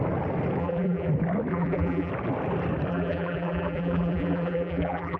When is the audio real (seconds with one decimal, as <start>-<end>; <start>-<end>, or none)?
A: 0.0-0.6; 1.1-1.5; 2.1-2.9